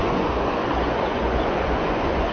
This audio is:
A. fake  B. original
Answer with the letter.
A